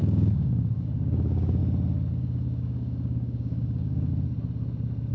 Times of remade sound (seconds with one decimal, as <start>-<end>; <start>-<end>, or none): 0.0-1.6; 2.1-4.1